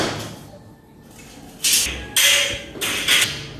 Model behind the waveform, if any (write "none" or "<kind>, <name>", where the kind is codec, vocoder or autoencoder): none